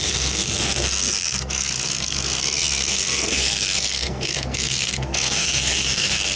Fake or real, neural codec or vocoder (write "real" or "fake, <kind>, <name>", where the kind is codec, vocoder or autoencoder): fake, codec, SNAC